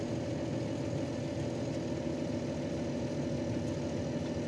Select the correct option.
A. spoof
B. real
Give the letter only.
B